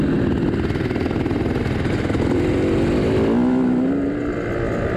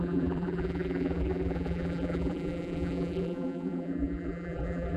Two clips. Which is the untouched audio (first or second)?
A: first